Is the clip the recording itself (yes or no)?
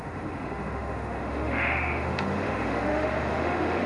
no